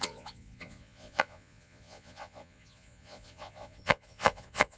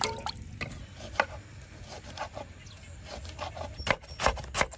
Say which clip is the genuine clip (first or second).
second